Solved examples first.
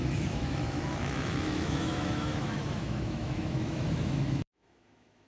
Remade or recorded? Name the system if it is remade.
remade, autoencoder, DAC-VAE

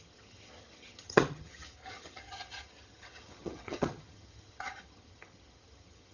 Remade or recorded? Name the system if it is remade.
remade, vocoder, HiFi-GAN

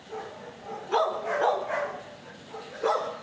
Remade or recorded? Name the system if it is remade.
recorded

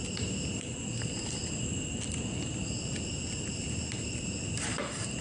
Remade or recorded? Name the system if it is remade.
remade, vocoder, BigVGAN v2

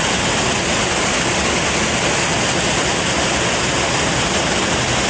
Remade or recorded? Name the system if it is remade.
recorded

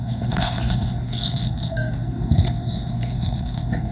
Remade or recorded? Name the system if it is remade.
remade, codec, SNAC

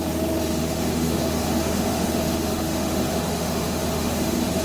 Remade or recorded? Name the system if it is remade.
remade, autoencoder, DAC-VAE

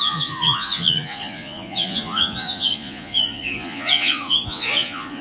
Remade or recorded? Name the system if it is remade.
remade, vocoder, Vocos